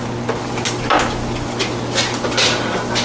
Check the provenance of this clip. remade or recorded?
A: recorded